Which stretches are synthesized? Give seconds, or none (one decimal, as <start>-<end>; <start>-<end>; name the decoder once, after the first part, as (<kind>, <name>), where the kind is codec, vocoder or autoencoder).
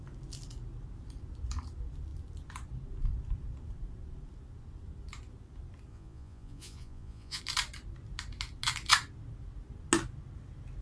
5.9-7.4 (vocoder, Vocos)